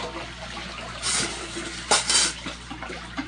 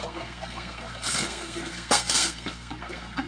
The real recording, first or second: first